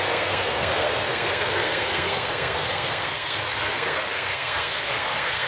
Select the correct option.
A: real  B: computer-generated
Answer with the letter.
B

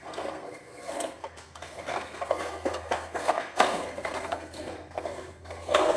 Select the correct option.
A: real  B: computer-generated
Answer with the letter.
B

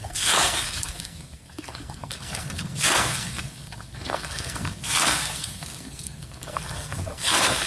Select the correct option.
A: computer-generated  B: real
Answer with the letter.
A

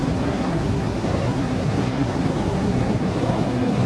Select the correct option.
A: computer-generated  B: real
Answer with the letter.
A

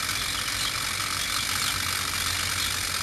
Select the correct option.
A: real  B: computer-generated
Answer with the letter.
A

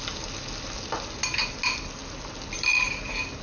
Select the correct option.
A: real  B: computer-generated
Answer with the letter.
A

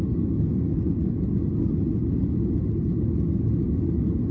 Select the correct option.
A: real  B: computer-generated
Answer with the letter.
A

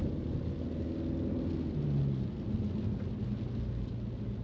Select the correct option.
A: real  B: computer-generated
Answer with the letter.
A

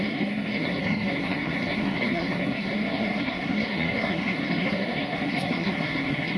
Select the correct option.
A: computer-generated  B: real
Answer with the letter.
A